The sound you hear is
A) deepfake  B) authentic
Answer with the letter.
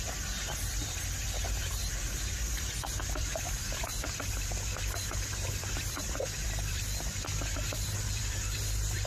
A